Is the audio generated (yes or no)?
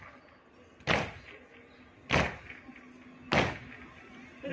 no